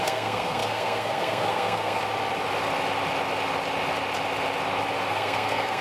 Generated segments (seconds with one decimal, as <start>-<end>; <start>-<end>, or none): 0.0-2.0; 5.1-5.8